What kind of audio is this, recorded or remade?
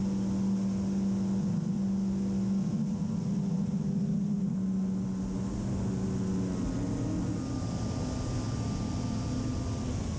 recorded